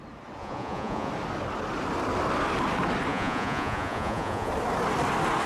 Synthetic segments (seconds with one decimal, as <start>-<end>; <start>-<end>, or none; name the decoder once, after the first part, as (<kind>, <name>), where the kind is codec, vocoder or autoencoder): 0.4-1.1 (vocoder, Vocos); 3.1-4.5